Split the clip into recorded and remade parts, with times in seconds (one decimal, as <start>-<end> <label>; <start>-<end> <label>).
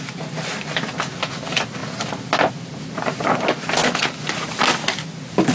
0.0-5.5 recorded